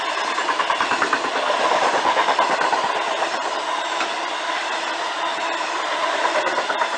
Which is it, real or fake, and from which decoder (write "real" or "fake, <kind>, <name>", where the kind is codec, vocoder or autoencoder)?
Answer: real